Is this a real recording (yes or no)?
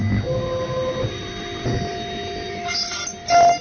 yes